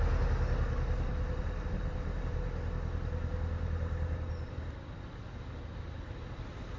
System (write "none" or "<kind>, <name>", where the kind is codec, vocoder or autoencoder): none